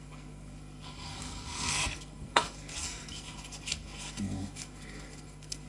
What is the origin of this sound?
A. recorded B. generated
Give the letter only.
B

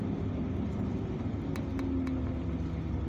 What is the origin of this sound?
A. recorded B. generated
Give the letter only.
A